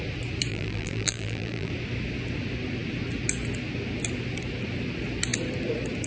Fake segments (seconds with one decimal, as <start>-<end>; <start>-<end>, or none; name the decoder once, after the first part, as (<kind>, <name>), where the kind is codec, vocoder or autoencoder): 0.5-1.7 (vocoder, BigVGAN v2)